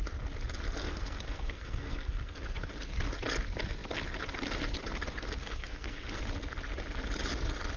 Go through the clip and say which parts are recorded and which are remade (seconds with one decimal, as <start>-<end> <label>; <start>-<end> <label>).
0.0-0.8 recorded; 0.8-2.7 remade; 2.7-5.4 recorded; 5.4-6.2 remade; 6.2-7.8 recorded